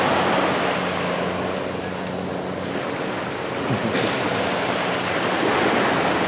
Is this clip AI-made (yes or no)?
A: no